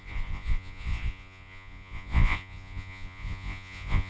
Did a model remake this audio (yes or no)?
yes